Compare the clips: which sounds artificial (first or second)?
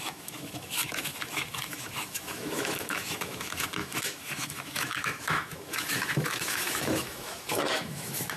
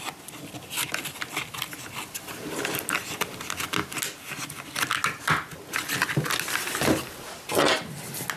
first